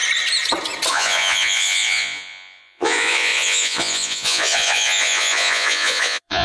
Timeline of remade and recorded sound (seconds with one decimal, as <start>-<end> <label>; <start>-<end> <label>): 0.0-0.9 recorded; 0.9-6.4 remade

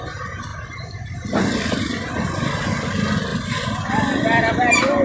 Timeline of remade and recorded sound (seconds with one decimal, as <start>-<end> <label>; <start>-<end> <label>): 0.0-3.3 remade; 3.3-3.9 recorded; 3.9-5.0 remade

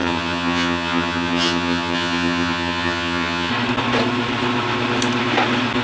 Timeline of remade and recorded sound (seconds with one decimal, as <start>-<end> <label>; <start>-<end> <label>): 0.0-3.5 remade; 3.5-5.8 recorded

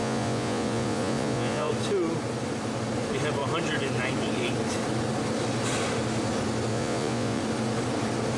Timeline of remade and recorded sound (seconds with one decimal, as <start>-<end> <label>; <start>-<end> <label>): 0.0-1.7 remade; 1.7-6.7 recorded; 6.7-7.4 remade; 7.4-8.4 recorded

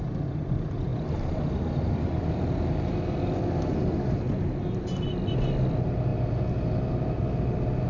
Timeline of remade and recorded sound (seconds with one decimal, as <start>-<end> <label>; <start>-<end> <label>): 0.0-0.9 recorded; 0.9-2.2 remade; 2.2-7.9 recorded